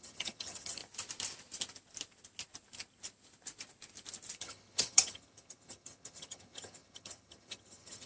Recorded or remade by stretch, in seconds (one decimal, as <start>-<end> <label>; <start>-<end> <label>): 0.0-0.8 remade; 0.8-4.4 recorded; 4.4-8.1 remade